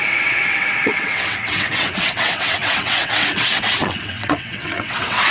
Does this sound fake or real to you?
fake